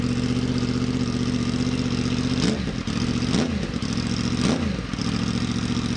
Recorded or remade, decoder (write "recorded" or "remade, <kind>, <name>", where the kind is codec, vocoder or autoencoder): recorded